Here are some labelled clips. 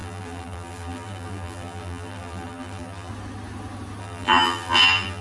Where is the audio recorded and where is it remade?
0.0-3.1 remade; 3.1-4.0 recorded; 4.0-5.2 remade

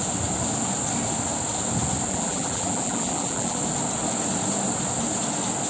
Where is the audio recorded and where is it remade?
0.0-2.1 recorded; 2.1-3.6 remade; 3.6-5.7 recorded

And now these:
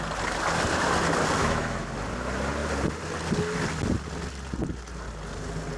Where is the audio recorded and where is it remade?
0.0-1.4 recorded; 1.4-1.9 remade; 1.9-5.8 recorded

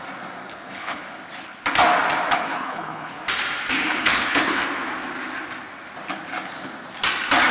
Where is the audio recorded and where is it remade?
0.0-0.5 recorded; 0.5-1.0 remade; 1.0-2.5 recorded; 2.5-3.2 remade; 3.2-3.9 recorded; 3.9-4.6 remade; 4.6-7.5 recorded